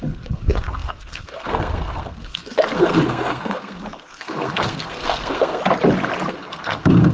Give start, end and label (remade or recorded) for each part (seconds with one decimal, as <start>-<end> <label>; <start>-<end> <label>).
0.0-5.6 remade; 5.6-6.3 recorded; 6.3-7.1 remade